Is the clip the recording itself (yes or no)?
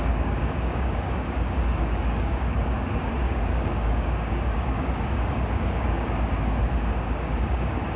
no